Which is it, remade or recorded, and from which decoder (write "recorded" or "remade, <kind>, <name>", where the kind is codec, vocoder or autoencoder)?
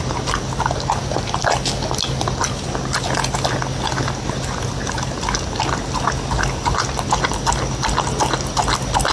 recorded